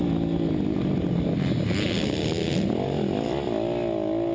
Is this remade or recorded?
recorded